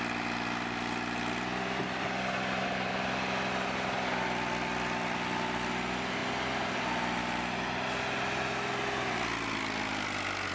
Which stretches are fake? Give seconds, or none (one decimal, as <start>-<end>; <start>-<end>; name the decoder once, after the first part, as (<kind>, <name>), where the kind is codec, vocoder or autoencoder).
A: none